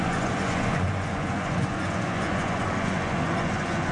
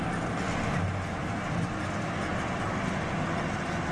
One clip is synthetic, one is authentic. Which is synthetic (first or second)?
first